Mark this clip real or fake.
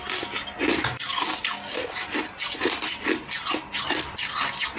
real